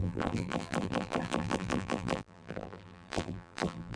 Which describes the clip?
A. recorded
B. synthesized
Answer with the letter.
B